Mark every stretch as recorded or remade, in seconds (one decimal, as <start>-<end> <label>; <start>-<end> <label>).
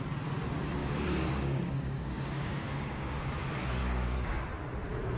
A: 0.0-0.8 recorded; 0.8-3.2 remade; 3.2-3.8 recorded; 3.8-4.4 remade; 4.4-5.2 recorded